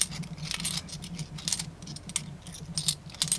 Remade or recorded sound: recorded